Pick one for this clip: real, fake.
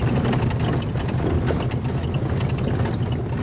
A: real